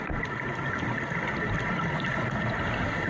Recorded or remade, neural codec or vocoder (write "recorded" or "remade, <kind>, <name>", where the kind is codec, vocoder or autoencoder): recorded